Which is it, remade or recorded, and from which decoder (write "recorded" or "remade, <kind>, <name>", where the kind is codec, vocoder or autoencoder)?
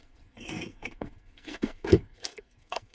remade, codec, SNAC